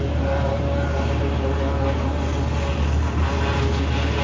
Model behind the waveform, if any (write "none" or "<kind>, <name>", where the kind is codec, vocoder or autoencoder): none